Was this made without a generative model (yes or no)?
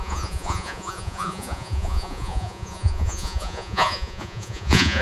no